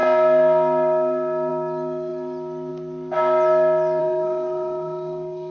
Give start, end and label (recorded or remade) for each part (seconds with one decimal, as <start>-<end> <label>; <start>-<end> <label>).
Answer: 0.0-4.0 recorded; 4.0-5.5 remade